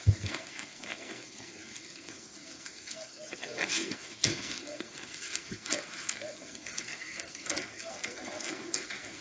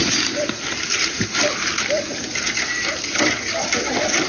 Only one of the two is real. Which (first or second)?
second